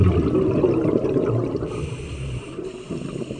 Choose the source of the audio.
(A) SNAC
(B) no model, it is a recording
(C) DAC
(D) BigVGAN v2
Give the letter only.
B